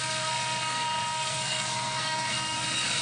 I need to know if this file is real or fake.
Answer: fake